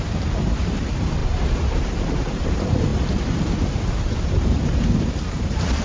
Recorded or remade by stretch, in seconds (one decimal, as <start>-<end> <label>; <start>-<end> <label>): 0.0-5.8 remade